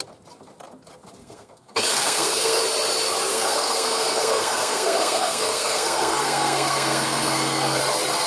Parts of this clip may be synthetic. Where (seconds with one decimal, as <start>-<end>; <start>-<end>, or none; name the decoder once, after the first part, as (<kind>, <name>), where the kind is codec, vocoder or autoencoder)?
1.2-2.6 (codec, SNAC); 3.3-7.8